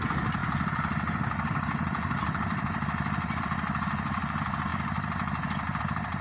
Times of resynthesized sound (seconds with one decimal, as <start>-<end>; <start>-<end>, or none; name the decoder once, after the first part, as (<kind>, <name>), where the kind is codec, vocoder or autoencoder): none